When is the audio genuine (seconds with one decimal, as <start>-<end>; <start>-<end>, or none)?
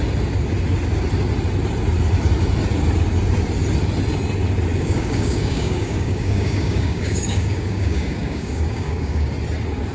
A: 0.0-4.7; 9.3-9.9